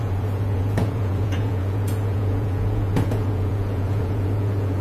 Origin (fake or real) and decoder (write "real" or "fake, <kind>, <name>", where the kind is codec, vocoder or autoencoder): fake, vocoder, Vocos